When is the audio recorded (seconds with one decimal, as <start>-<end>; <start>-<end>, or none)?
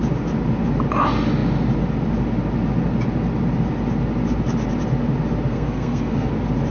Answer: 0.0-5.5; 6.3-6.7